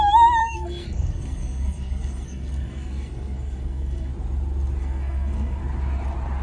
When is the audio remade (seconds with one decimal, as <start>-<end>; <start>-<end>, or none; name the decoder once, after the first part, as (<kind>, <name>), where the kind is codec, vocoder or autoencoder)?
0.4-4.1 (codec, SNAC); 4.8-5.6